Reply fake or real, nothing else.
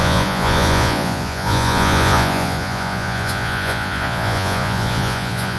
fake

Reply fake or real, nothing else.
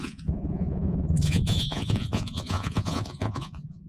fake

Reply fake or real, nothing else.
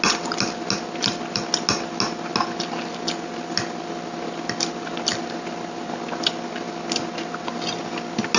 real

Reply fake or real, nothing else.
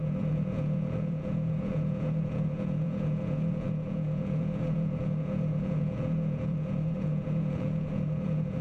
fake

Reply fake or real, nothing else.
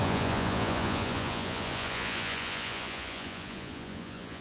fake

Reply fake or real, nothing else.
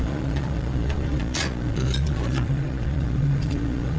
fake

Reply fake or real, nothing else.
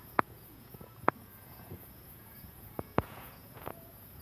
fake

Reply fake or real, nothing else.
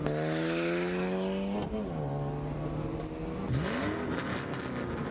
real